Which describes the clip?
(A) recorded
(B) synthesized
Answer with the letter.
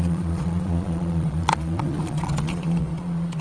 B